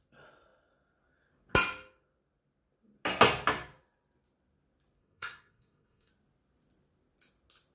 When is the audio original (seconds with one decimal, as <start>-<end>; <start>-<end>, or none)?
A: 0.0-5.0; 6.1-7.7